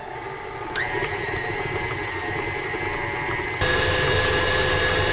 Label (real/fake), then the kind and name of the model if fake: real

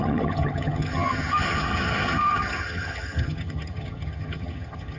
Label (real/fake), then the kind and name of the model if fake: fake, vocoder, HiFi-GAN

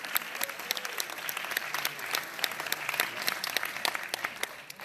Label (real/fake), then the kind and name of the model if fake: real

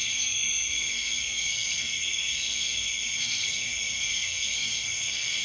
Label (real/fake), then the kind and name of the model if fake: fake, codec, SNAC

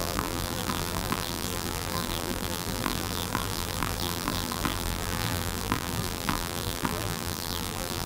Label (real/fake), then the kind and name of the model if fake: fake, vocoder, BigVGAN v2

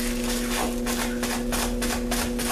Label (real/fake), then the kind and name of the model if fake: real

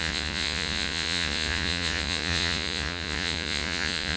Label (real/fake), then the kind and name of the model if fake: fake, vocoder, Vocos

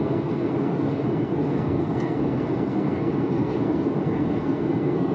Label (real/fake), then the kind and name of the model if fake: fake, codec, SNAC